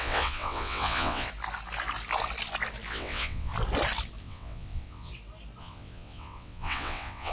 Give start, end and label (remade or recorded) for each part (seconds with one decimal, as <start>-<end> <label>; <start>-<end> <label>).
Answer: 0.0-1.3 remade; 1.3-2.9 recorded; 2.9-3.5 remade; 3.5-4.2 recorded; 4.2-5.1 remade; 5.1-5.6 recorded; 5.6-7.3 remade